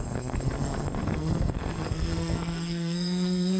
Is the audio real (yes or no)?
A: no